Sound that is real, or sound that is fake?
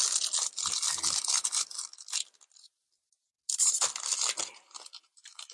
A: real